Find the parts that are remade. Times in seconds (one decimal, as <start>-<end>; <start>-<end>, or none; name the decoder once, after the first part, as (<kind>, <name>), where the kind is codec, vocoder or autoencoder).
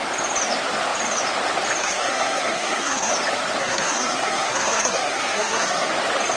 1.8-3.1 (codec, SNAC); 3.6-5.9